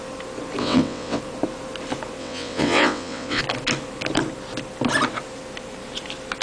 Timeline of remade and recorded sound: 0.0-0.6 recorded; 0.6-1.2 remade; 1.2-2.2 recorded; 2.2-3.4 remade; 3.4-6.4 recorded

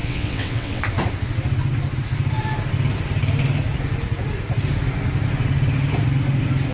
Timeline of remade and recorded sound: 0.0-0.8 remade; 0.8-6.7 recorded

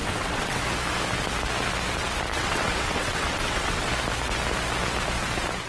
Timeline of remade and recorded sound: 0.0-0.6 remade; 0.6-2.3 recorded; 2.3-3.9 remade; 3.9-5.7 recorded

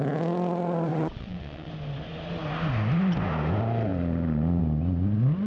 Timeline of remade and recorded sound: 0.0-0.9 recorded; 0.9-1.7 remade; 1.7-5.5 recorded

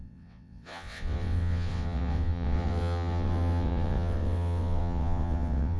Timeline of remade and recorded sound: 0.0-5.8 remade

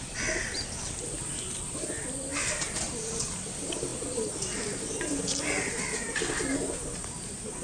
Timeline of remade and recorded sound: 0.0-7.6 recorded